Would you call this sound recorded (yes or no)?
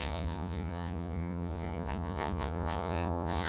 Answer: no